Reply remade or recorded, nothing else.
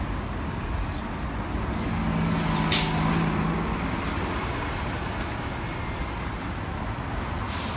recorded